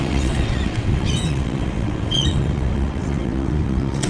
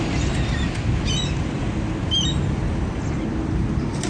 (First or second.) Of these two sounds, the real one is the second